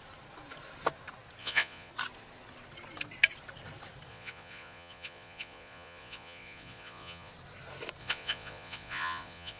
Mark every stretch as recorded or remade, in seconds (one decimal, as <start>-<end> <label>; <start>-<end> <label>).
0.0-1.4 recorded; 1.4-1.9 remade; 1.9-4.1 recorded; 4.1-7.3 remade; 7.3-8.0 recorded; 8.0-9.6 remade